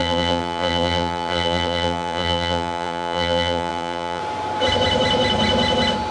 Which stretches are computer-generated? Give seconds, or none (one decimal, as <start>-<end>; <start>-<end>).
0.0-4.2